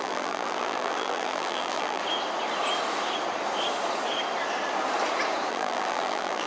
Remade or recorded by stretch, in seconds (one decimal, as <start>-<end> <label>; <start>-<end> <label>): 0.0-2.0 remade; 2.0-5.5 recorded; 5.5-6.5 remade